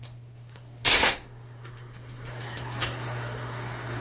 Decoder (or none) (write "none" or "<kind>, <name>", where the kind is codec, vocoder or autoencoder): codec, SNAC